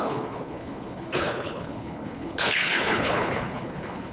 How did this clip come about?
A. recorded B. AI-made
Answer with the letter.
B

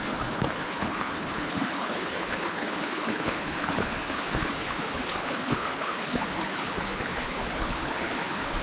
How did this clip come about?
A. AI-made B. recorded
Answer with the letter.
A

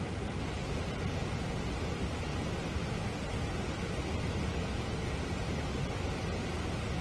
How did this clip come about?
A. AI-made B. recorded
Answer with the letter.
B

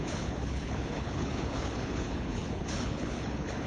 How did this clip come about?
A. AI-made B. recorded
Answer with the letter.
A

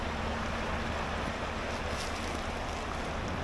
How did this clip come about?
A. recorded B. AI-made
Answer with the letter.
A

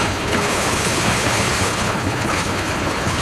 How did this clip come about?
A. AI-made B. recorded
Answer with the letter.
A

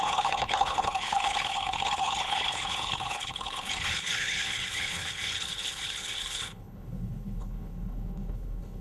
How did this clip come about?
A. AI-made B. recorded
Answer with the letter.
A